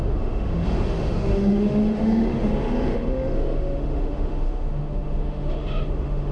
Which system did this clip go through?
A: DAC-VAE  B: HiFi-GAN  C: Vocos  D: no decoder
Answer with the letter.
A